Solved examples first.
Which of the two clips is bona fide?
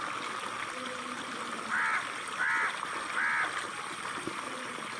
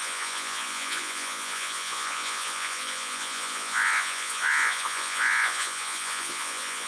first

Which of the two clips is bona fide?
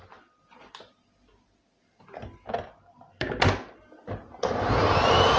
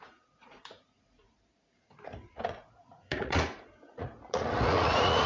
first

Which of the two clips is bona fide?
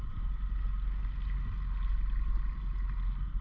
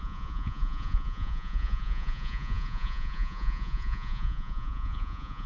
first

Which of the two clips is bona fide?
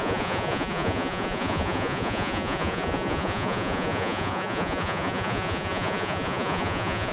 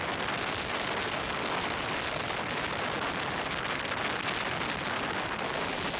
second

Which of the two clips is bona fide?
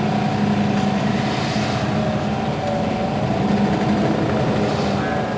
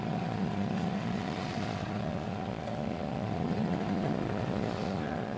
first